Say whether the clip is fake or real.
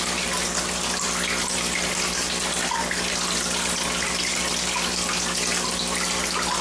real